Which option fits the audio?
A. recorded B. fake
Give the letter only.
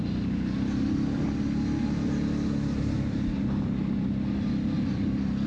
A